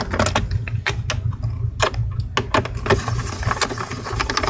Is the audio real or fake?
real